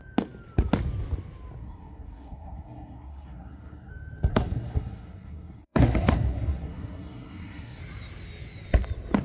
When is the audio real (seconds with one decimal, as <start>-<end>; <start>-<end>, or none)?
0.0-1.6; 3.9-4.3; 7.8-9.2